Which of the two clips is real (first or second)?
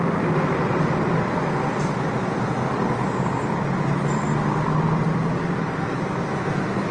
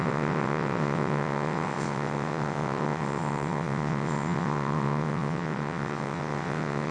first